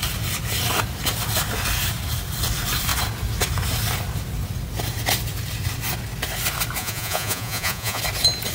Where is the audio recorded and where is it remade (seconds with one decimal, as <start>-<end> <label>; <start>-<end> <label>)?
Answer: 0.0-6.8 recorded; 6.8-8.0 remade; 8.0-8.5 recorded